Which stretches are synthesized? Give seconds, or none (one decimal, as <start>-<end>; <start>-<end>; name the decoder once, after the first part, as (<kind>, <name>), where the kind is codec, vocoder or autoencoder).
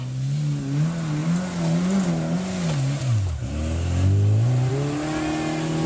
none